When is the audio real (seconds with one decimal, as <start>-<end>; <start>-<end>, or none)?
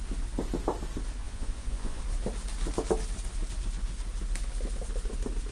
0.0-1.2; 2.0-5.5